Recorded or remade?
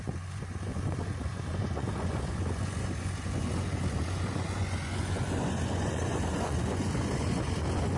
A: remade